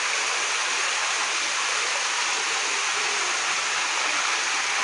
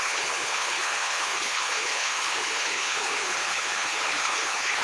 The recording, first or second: first